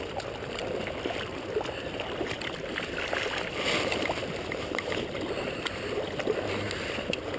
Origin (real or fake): real